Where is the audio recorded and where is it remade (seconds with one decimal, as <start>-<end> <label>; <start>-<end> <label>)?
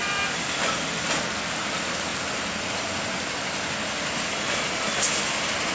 0.0-5.7 recorded